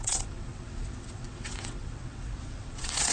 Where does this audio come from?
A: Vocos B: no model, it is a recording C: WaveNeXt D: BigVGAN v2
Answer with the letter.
C